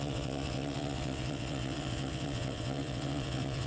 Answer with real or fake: fake